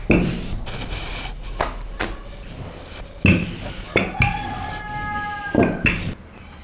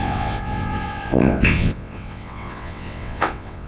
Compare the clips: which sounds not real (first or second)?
second